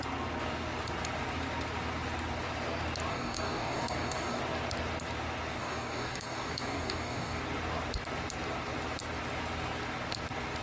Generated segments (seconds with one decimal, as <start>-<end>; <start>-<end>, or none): 3.1-4.4; 5.6-7.4